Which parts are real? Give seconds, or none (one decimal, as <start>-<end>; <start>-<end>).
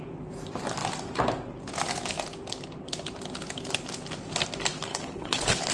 0.0-4.9